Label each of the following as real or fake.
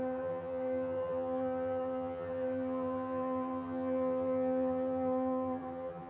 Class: fake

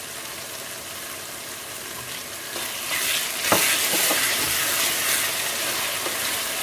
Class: real